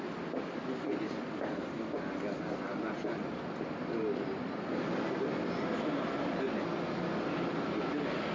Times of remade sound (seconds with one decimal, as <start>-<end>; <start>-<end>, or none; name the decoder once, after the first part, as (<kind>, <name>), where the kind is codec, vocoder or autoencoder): none